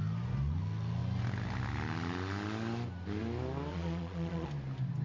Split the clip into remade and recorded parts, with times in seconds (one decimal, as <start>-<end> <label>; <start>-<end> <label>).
0.0-3.7 recorded; 3.7-4.5 remade; 4.5-5.0 recorded